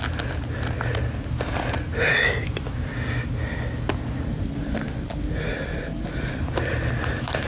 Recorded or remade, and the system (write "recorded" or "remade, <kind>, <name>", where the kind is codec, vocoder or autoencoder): recorded